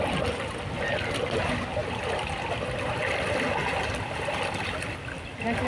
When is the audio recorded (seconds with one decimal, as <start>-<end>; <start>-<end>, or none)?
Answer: 0.0-5.7